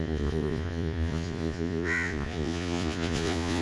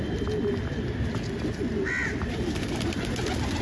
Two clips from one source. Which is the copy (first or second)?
first